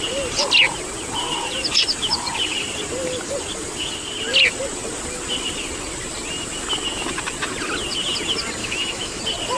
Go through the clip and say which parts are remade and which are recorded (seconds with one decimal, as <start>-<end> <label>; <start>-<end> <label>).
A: 0.0-8.6 recorded; 8.6-9.2 remade; 9.2-9.6 recorded